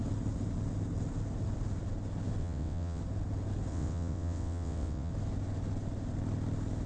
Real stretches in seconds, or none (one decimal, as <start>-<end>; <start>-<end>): 0.0-2.4; 3.0-3.7; 5.1-6.9